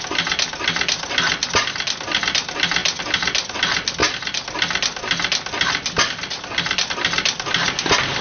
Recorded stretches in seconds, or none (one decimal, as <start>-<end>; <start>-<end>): 0.0-8.2